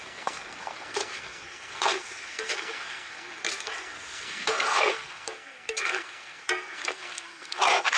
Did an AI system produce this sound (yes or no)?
yes